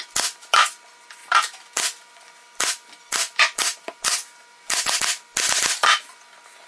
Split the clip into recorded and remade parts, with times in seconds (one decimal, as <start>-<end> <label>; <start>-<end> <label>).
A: 0.0-1.2 recorded; 1.2-5.2 remade; 5.2-6.7 recorded